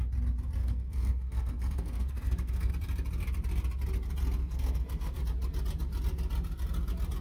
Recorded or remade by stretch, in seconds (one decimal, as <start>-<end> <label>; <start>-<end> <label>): 0.0-0.6 recorded; 0.6-2.7 remade; 2.7-4.4 recorded; 4.4-5.2 remade; 5.2-7.2 recorded